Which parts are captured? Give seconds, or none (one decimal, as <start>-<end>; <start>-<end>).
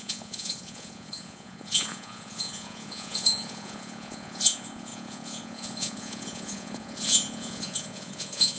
none